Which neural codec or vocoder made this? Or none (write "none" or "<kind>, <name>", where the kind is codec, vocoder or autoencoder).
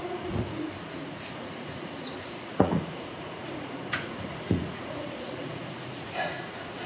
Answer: vocoder, Vocos